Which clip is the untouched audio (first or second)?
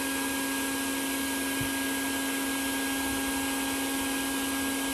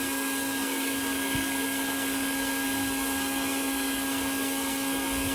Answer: first